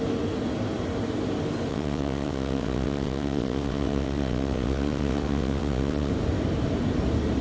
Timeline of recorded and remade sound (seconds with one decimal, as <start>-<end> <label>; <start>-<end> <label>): 0.0-1.7 recorded; 1.7-6.1 remade; 6.1-7.4 recorded